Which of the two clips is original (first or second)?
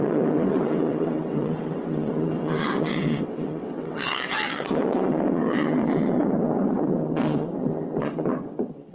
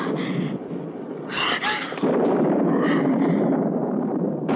second